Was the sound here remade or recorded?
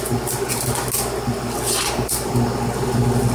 recorded